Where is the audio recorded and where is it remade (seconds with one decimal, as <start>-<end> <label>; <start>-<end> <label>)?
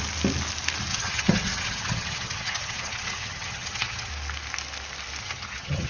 0.0-0.9 recorded; 0.9-4.1 remade; 4.1-5.2 recorded; 5.2-5.9 remade